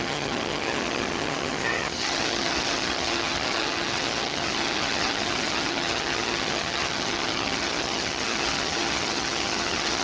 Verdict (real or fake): fake